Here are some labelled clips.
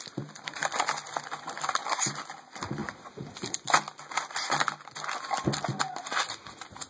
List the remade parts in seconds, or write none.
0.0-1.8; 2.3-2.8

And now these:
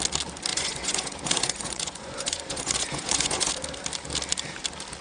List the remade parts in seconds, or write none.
0.5-3.5

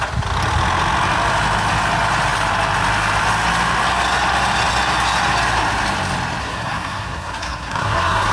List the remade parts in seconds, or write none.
6.4-8.3

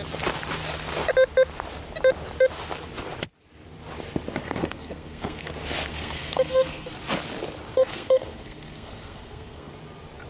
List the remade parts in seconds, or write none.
4.4-5.4; 5.9-6.9; 7.7-9.7

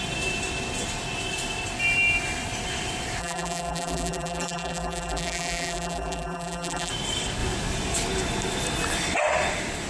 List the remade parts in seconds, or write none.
3.2-6.9

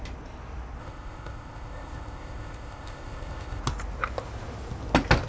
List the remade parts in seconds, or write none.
0.8-3.6

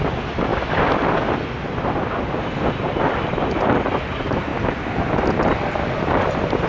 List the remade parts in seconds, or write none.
none